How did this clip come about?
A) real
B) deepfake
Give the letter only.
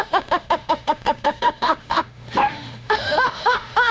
B